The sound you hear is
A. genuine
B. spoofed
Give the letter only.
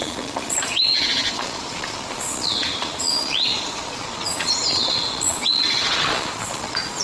B